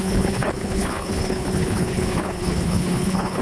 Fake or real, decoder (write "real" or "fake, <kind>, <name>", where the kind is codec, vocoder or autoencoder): fake, codec, HILCodec